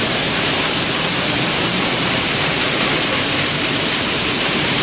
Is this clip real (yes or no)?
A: no